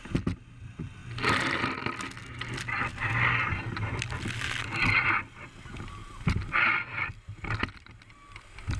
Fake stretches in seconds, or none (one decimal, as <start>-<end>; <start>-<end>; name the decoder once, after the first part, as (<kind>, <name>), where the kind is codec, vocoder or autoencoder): none